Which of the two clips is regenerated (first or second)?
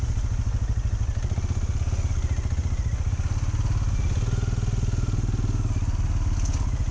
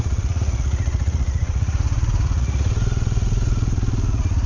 second